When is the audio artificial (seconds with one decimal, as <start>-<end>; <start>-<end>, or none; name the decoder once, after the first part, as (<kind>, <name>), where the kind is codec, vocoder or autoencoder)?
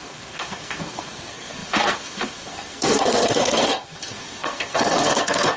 0.0-5.6 (codec, SNAC)